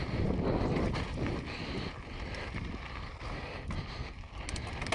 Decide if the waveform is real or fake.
real